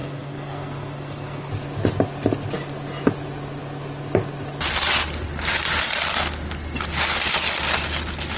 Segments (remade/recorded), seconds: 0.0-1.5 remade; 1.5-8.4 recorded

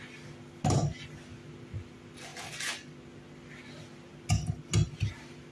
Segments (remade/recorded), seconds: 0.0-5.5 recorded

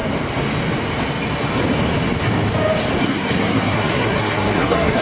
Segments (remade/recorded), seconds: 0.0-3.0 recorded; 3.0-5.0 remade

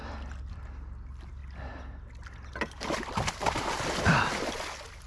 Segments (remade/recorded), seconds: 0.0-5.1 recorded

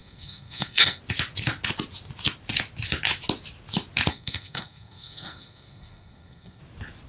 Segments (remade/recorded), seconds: 0.0-1.0 remade; 1.0-4.1 recorded; 4.1-6.6 remade; 6.6-7.1 recorded

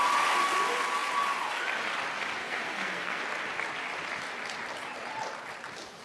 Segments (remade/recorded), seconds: 0.0-2.4 recorded; 2.4-3.2 remade; 3.2-6.0 recorded